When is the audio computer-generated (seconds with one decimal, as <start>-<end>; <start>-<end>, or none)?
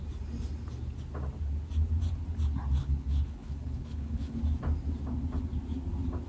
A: 2.8-4.4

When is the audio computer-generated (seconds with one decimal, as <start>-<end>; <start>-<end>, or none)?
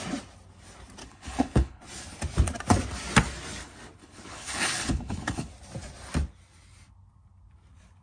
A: 1.0-1.8; 4.0-5.5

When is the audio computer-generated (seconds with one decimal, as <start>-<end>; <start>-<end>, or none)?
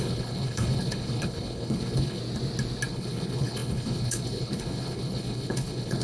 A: 0.0-2.2; 2.9-6.0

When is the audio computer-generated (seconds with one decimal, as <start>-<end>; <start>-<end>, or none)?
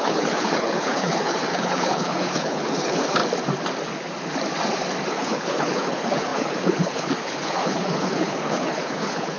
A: 0.0-3.2; 5.1-9.4